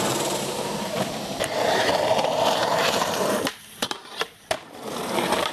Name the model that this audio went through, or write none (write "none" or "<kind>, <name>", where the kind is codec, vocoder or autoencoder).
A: vocoder, BigVGAN v2